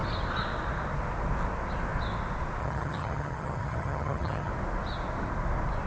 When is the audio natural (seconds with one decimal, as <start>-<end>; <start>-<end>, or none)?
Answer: 0.0-2.6; 4.5-5.9